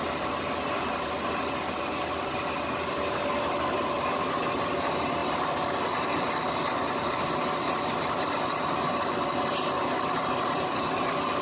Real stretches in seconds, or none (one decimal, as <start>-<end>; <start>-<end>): 5.2-6.8